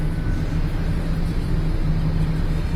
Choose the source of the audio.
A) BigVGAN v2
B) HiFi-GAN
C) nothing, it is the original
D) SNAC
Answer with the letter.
C